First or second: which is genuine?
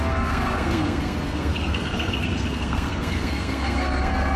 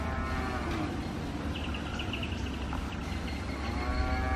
second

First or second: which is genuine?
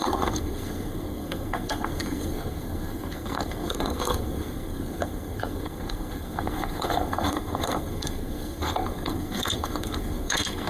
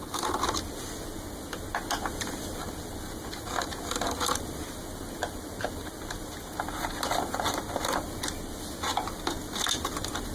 second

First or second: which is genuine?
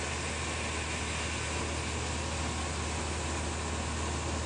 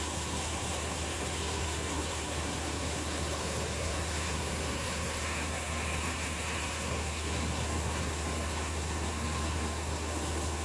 first